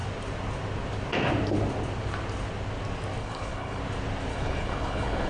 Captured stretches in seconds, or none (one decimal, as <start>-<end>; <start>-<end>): 0.0-3.2; 3.8-4.3